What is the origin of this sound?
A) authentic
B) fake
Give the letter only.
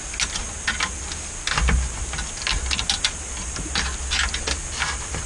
A